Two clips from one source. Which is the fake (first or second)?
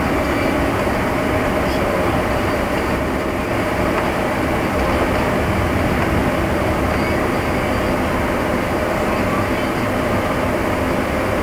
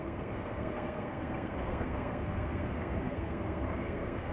second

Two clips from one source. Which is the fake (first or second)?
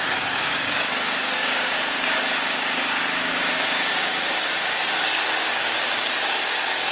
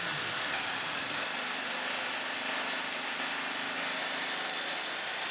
first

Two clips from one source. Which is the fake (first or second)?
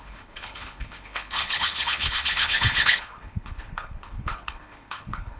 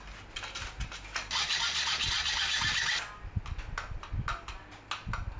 first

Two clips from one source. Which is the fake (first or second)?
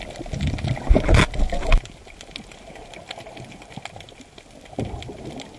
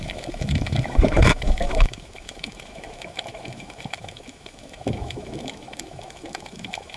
second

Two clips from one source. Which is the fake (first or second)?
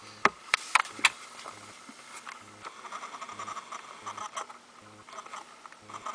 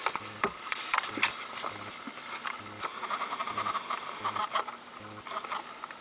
second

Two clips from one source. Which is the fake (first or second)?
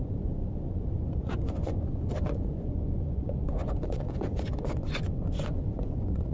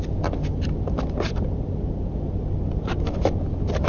first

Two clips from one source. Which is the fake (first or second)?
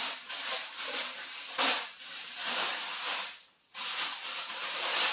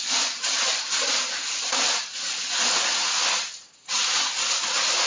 first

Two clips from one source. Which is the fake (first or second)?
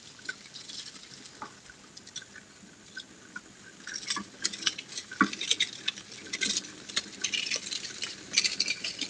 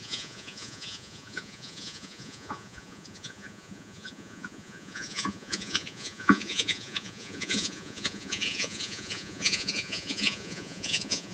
second